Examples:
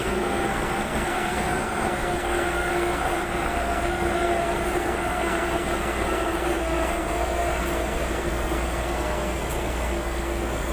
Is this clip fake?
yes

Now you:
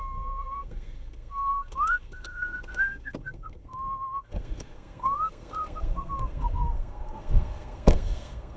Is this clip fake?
yes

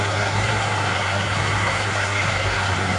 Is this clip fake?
yes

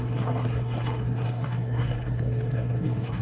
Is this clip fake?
yes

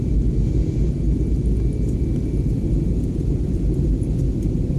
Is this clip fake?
no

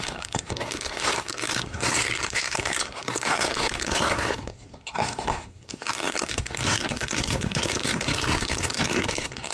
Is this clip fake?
yes